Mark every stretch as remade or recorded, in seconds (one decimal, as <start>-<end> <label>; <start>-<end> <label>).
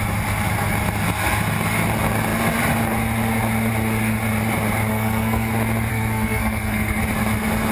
0.0-4.9 recorded; 4.9-5.5 remade; 5.5-5.9 recorded; 5.9-7.0 remade; 7.0-7.7 recorded